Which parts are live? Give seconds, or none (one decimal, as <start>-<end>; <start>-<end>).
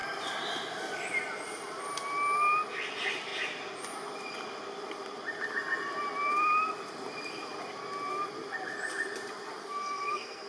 0.0-9.6